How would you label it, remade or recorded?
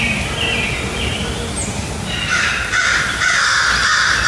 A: recorded